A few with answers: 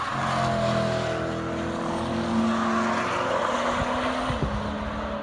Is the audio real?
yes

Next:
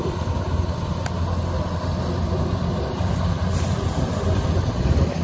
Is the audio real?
yes